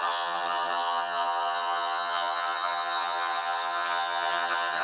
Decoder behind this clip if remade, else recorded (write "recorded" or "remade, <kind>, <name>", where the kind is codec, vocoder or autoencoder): remade, vocoder, HiFi-GAN